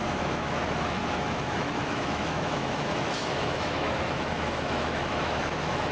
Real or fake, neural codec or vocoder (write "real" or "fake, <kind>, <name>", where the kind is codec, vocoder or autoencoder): fake, autoencoder, DAC-VAE